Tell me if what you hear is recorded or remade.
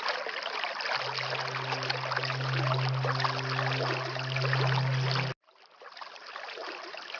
recorded